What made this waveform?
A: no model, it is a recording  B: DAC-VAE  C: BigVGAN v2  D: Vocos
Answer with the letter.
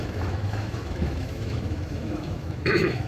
B